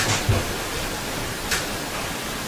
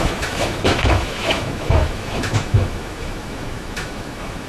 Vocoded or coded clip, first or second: second